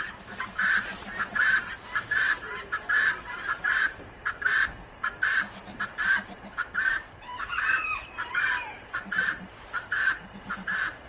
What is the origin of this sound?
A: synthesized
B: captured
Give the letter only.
A